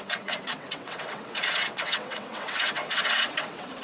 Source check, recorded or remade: remade